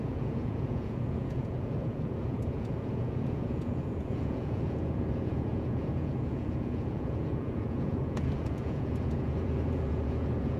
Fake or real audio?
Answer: fake